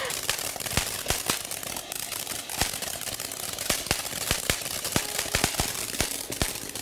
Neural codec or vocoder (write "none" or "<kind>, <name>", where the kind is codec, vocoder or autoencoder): none